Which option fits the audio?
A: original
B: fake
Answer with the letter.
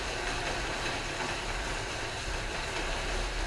B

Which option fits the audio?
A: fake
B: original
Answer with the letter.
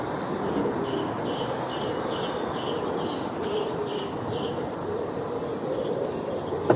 B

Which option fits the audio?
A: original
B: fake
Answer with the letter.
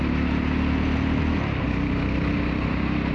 A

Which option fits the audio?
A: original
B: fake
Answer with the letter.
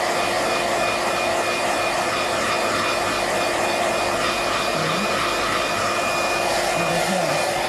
A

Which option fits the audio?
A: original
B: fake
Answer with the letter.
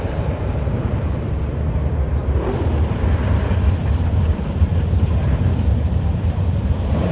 B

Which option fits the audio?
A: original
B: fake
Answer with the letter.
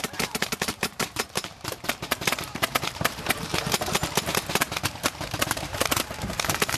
B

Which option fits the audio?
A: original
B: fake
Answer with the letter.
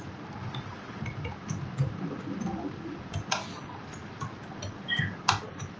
B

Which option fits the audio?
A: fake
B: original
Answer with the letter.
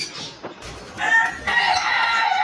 A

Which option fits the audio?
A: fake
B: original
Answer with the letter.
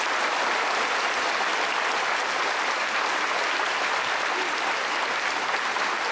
B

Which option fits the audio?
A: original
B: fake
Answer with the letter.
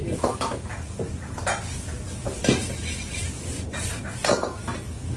A